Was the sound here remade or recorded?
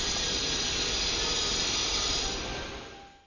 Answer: recorded